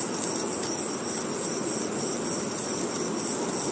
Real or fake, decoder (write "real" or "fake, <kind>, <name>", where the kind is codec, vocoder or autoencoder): real